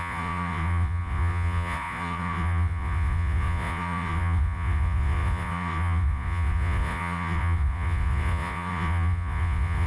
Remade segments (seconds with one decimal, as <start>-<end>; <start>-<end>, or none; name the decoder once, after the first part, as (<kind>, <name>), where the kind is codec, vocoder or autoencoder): 0.0-9.9 (vocoder, Vocos)